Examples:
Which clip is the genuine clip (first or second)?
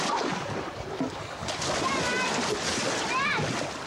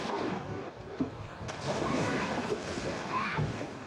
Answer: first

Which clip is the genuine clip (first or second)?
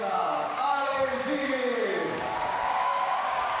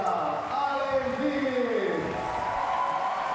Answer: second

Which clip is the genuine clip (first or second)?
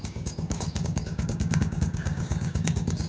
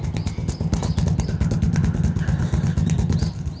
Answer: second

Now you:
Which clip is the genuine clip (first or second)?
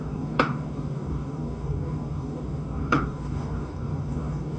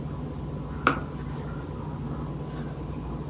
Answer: second